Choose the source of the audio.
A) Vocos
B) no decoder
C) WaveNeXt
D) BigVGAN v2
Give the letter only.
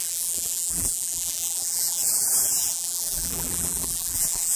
D